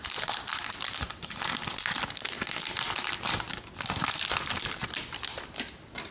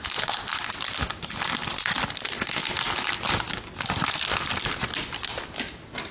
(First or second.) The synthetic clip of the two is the first